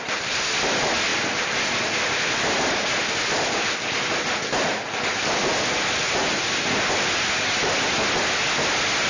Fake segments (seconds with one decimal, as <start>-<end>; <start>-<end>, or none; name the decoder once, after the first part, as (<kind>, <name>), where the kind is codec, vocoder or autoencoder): none